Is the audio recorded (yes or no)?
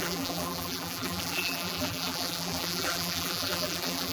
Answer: no